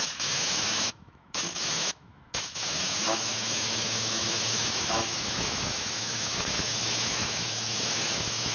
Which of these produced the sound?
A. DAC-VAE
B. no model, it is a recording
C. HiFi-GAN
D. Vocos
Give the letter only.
A